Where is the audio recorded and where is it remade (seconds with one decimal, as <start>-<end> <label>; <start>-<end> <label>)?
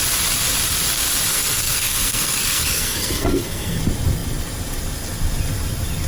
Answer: 0.0-1.3 recorded; 1.3-3.8 remade; 3.8-6.1 recorded